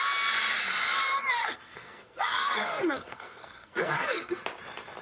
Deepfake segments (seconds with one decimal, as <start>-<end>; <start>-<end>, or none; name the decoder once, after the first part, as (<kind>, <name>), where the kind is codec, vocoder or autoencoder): 1.4-4.4 (codec, SNAC)